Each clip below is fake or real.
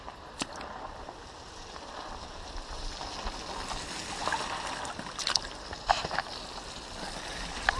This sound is real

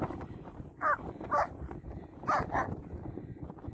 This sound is fake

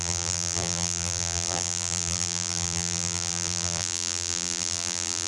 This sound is fake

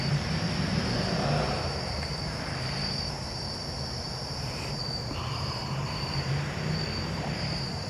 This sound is fake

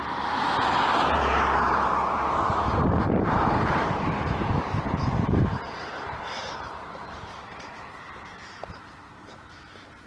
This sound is fake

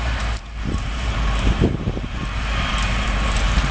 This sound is fake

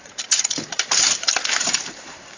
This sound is fake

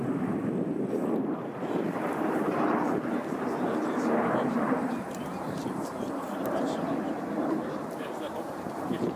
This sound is fake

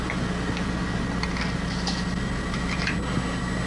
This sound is real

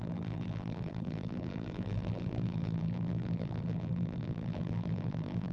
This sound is fake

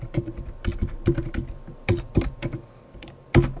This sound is real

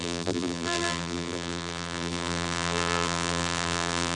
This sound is fake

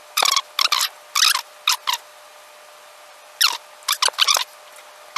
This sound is real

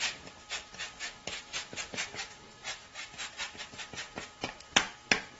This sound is real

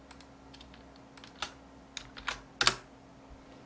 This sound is real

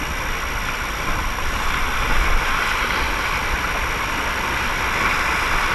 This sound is real